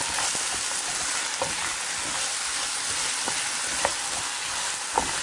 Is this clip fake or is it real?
real